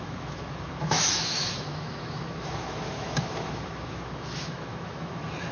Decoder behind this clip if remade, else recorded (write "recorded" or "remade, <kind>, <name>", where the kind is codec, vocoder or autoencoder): remade, autoencoder, DAC-VAE